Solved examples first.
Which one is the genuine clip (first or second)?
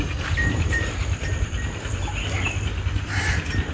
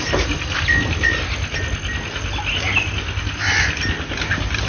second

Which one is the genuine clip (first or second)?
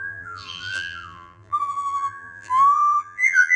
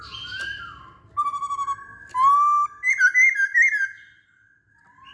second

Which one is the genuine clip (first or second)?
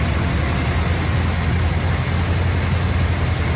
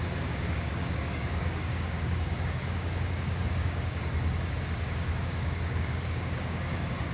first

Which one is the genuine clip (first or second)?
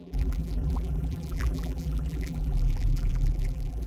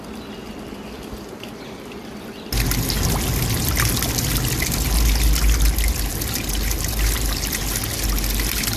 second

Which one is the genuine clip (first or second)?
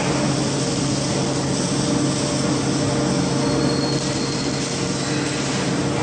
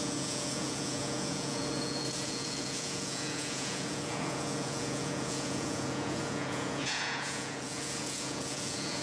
first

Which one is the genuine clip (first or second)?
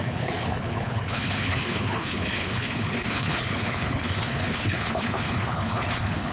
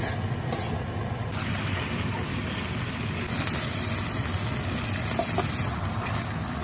second